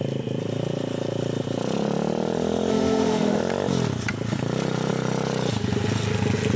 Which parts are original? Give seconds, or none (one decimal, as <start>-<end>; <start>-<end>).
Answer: 0.0-2.7; 3.4-6.6